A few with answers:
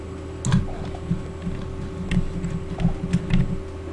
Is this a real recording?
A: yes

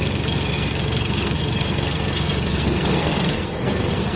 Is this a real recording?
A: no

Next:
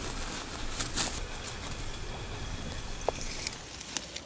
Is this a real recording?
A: yes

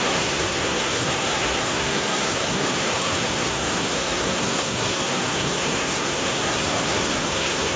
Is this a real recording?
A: no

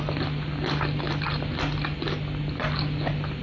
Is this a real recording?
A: yes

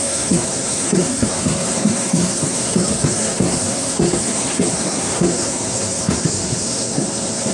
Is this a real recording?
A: no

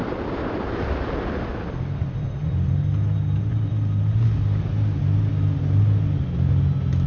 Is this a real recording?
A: yes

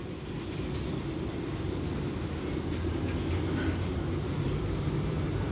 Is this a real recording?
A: yes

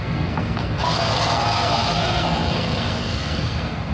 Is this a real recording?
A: no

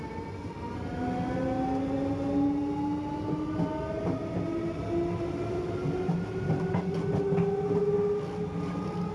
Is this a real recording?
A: yes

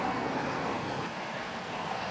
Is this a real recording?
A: no